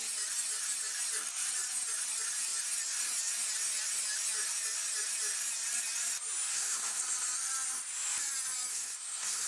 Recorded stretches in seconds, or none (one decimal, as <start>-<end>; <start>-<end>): 0.0-6.5; 7.0-8.7